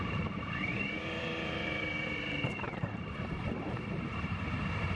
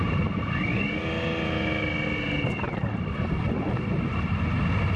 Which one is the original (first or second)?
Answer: second